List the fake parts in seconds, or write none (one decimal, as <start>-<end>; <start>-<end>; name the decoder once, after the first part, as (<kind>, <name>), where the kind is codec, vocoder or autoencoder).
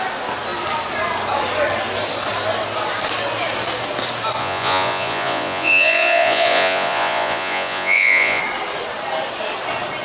4.4-8.4 (vocoder, Vocos)